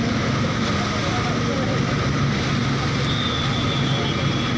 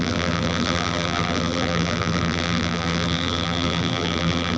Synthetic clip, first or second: second